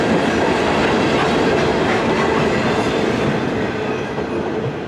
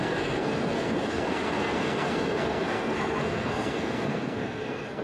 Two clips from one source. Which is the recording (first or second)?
first